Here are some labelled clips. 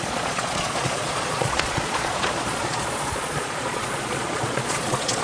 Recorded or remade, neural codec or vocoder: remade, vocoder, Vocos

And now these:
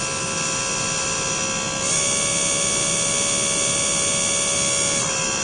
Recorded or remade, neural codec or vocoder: recorded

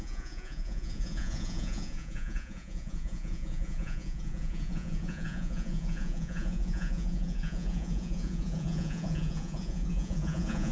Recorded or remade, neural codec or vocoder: remade, vocoder, Vocos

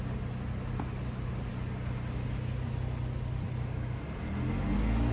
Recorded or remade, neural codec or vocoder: recorded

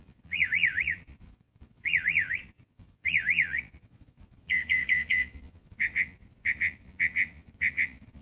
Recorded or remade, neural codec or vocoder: remade, vocoder, Vocos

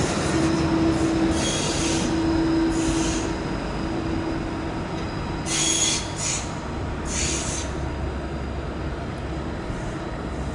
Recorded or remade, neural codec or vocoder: recorded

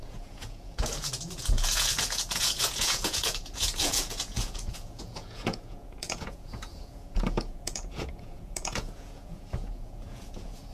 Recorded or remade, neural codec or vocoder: remade, vocoder, Vocos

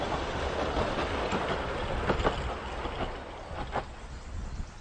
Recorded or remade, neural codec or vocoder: recorded